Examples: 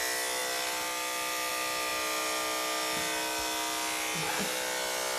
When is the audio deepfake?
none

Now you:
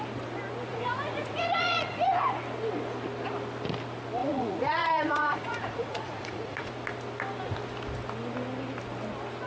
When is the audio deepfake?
0.7-2.1 (vocoder, Vocos); 4.2-6.7